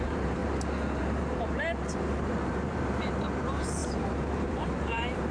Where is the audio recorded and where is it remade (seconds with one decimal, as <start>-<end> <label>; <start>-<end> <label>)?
0.0-0.4 remade; 0.4-1.0 recorded; 1.0-5.3 remade